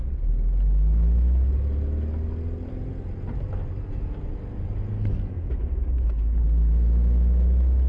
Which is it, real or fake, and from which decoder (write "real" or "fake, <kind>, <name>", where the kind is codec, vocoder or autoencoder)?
real